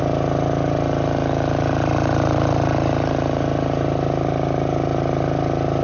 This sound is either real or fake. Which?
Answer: real